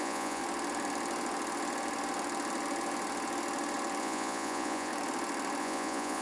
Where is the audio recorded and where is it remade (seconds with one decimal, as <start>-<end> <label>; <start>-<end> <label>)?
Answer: 0.0-0.4 remade; 0.4-4.0 recorded; 4.0-4.9 remade; 4.9-5.6 recorded; 5.6-6.2 remade